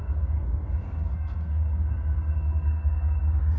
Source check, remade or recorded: remade